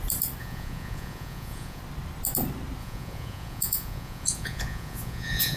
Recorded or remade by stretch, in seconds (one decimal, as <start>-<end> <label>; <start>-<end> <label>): 0.0-0.4 recorded; 0.4-1.8 remade; 1.8-2.8 recorded; 2.8-5.6 remade